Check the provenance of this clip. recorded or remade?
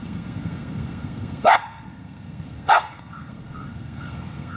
remade